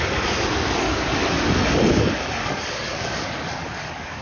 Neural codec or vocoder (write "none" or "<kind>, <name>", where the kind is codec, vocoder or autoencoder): codec, DAC